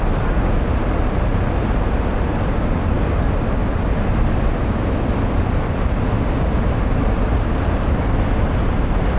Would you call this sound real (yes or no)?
yes